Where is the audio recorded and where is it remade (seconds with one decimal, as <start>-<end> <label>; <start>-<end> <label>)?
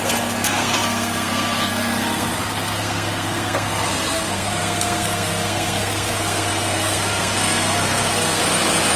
0.0-8.4 remade; 8.4-9.0 recorded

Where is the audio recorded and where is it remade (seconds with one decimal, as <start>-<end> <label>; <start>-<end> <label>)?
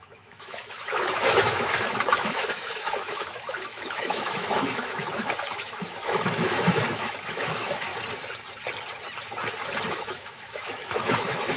0.0-7.9 remade; 7.9-9.9 recorded; 9.9-11.6 remade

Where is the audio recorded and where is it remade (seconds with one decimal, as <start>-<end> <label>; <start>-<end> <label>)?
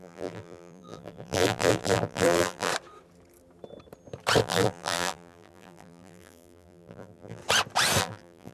0.0-2.7 remade; 2.7-4.4 recorded; 4.4-7.4 remade; 7.4-8.0 recorded; 8.0-8.5 remade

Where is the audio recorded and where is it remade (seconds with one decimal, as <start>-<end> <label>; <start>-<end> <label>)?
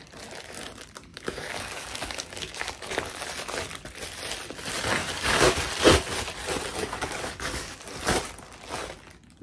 0.0-1.1 recorded; 1.1-3.2 remade; 3.2-5.0 recorded; 5.0-5.6 remade; 5.6-6.8 recorded; 6.8-7.8 remade; 7.8-9.4 recorded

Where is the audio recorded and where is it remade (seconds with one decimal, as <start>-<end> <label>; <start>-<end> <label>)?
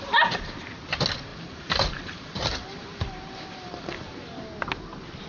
0.0-1.3 recorded; 1.3-4.4 remade; 4.4-5.3 recorded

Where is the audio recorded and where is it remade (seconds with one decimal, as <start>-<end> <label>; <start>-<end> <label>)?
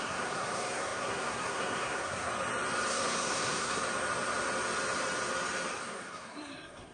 0.0-2.3 remade; 2.3-2.9 recorded; 2.9-3.8 remade; 3.8-5.8 recorded; 5.8-6.9 remade